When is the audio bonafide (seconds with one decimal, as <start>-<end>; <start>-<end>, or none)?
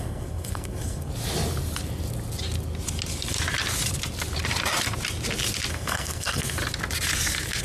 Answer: 1.1-5.7; 6.6-7.6